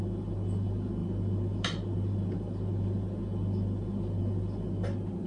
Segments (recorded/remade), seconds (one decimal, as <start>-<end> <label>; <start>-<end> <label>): 0.0-5.3 recorded